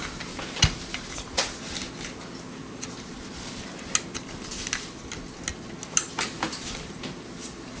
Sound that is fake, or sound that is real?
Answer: real